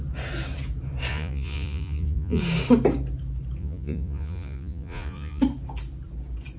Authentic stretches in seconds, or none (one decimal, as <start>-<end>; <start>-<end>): 0.0-1.1; 2.4-3.6; 5.4-6.6